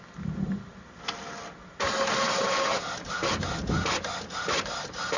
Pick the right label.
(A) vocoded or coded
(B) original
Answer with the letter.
B